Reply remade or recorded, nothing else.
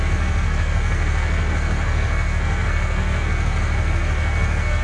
remade